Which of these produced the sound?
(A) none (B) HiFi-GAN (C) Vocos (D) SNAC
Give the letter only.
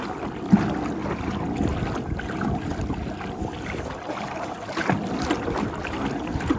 A